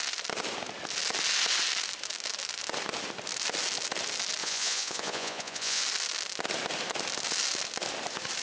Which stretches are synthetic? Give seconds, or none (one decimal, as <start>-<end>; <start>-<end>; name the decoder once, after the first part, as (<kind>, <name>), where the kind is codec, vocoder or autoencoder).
4.4-5.8 (vocoder, Vocos)